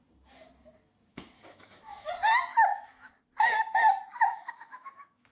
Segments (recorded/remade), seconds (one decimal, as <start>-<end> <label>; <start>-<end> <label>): 0.0-1.1 recorded; 1.1-2.1 remade; 2.1-2.5 recorded; 2.5-3.1 remade; 3.1-4.1 recorded; 4.1-5.3 remade